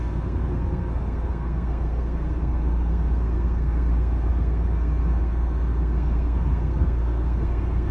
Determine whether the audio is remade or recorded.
remade